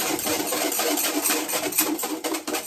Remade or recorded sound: recorded